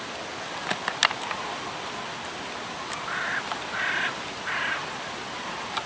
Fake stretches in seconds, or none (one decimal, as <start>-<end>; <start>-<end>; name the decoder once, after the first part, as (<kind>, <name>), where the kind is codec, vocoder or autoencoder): none